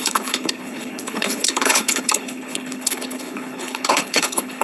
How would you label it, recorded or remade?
remade